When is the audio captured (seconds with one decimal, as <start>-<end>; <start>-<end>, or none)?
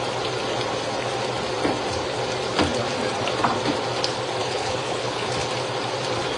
0.0-4.4; 5.3-6.4